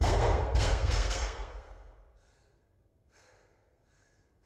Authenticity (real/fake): fake